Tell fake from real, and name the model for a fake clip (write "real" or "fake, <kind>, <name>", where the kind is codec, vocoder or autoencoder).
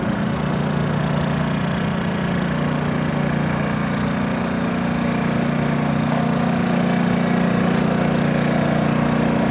real